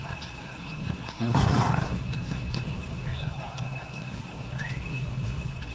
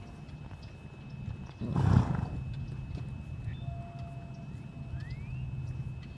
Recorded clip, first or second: second